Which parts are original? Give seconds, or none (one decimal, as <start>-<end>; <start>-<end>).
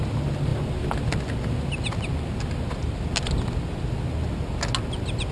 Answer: 0.0-5.3